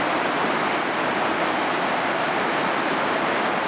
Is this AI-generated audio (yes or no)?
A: no